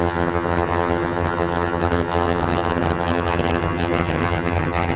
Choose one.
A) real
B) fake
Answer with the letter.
B